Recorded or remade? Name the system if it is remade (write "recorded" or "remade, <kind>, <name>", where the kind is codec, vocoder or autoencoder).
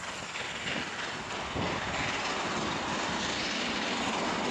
recorded